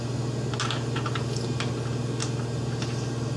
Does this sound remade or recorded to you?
recorded